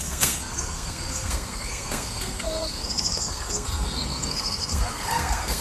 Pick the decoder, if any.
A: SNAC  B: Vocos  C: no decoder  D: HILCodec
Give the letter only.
A